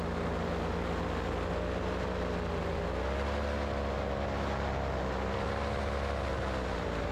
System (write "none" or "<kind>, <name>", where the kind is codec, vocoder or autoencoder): none